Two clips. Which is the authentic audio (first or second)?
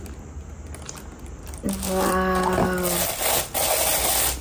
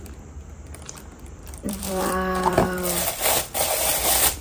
first